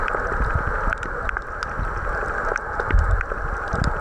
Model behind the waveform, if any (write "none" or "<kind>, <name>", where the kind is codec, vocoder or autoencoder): none